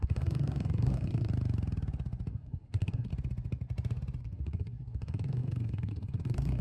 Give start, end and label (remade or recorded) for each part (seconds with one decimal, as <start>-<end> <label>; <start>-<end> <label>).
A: 0.0-1.3 remade; 1.3-2.3 recorded; 2.3-3.1 remade; 3.1-4.2 recorded; 4.2-6.6 remade